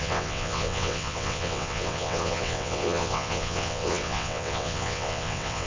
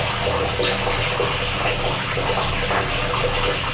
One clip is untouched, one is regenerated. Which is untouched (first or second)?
second